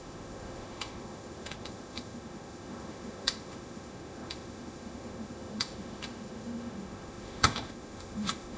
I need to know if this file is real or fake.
fake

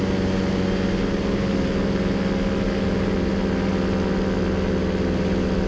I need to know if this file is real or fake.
real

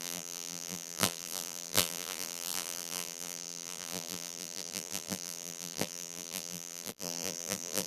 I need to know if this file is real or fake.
fake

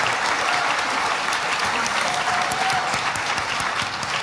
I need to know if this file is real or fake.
fake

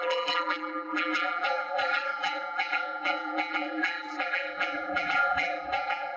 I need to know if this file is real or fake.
fake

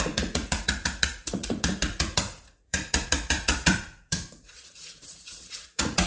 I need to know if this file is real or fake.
fake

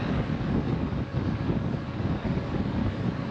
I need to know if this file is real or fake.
fake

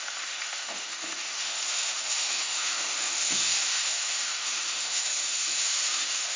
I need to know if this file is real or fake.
fake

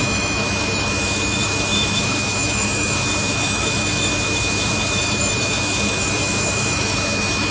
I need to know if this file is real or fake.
fake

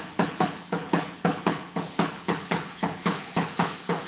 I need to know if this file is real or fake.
fake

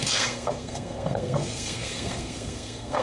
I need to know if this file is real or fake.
fake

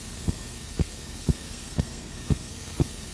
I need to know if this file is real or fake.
fake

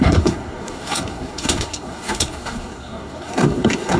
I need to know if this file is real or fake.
fake